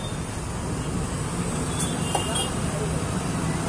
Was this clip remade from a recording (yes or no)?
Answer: no